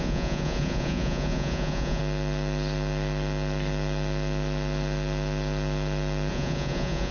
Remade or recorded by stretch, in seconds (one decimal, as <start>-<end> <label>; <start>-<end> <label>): 0.0-2.0 remade; 2.0-6.3 recorded; 6.3-7.1 remade